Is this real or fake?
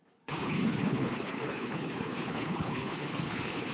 fake